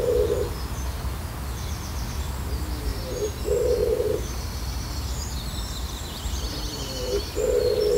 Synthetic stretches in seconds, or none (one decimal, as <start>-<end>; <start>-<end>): 2.9-3.4; 3.8-7.2